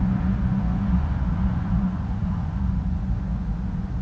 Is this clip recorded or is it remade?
remade